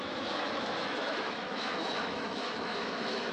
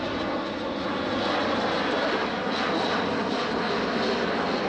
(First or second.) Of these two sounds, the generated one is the first